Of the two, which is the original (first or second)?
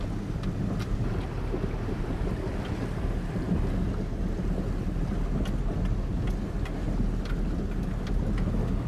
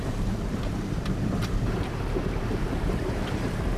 first